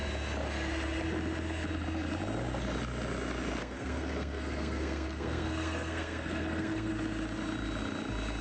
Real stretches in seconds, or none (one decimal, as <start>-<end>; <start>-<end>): 0.0-3.6; 6.9-8.4